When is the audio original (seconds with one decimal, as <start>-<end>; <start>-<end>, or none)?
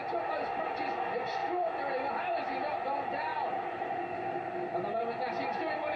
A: 0.0-3.3; 3.9-6.0